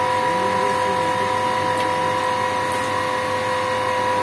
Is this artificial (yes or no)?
no